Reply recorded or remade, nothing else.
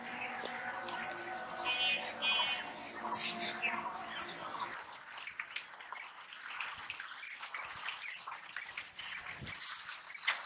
recorded